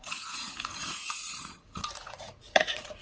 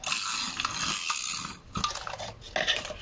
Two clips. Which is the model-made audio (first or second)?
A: first